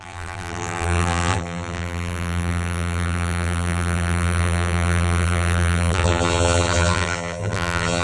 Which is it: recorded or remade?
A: remade